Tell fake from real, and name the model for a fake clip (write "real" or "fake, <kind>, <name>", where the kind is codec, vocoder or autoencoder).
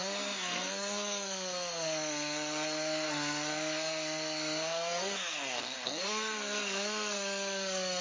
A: fake, codec, SNAC